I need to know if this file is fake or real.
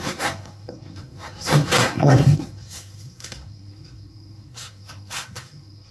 fake